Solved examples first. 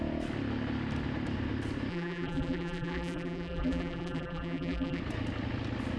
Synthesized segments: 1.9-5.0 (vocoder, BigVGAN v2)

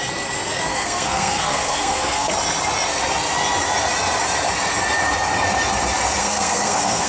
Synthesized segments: 0.7-2.3 (codec, SNAC); 6.2-7.1

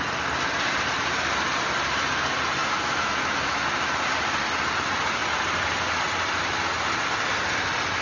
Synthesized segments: 2.6-3.6 (autoencoder, DAC-VAE)

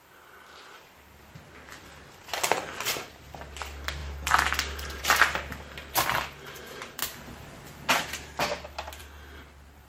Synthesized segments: 0.0-7.0 (vocoder, BigVGAN v2); 7.9-9.0

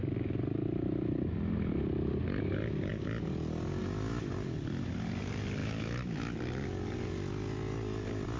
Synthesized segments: 5.6-6.4 (autoencoder, DAC-VAE)

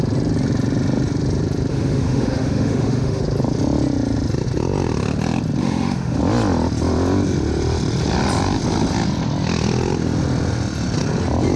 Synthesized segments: 1.7-3.2 (autoencoder, DAC-VAE); 5.6-6.2

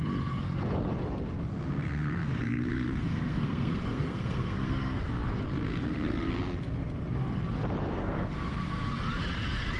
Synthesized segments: 1.5-5.1 (codec, SNAC); 5.6-6.3; 7.9-8.9